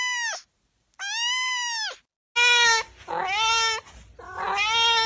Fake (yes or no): no